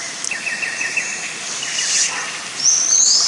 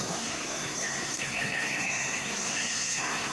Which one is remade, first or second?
second